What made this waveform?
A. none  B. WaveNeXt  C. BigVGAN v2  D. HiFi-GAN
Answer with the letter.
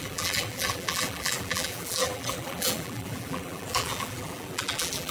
C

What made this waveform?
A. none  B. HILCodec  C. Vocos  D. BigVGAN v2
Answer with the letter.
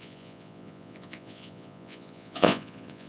C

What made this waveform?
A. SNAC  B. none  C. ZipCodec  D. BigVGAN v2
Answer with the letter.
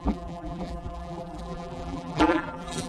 D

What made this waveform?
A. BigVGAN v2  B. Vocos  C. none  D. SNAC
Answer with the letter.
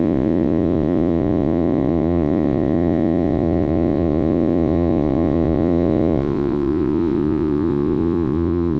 B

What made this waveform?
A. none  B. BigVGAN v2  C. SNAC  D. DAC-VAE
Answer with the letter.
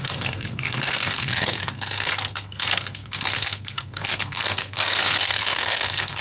C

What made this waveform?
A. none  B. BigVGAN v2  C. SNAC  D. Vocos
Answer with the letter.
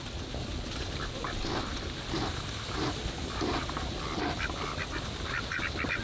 A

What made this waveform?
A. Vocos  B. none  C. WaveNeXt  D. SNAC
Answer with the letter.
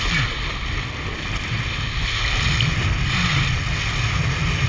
B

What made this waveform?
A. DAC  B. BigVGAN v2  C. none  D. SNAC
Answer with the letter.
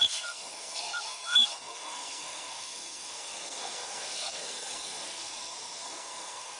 D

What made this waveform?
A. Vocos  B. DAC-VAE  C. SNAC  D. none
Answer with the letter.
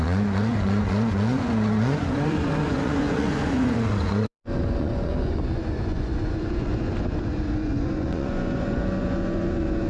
A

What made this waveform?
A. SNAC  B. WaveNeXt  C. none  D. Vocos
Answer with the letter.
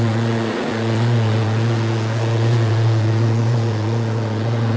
D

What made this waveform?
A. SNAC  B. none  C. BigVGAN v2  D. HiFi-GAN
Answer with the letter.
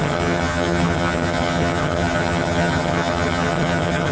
D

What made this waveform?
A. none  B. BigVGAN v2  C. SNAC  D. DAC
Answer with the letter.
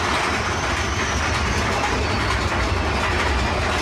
A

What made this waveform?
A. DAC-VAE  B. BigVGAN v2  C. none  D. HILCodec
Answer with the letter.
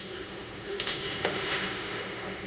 A